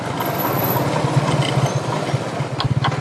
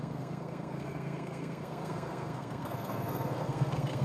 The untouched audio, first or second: first